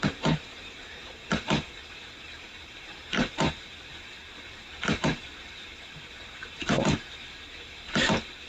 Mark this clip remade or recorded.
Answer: remade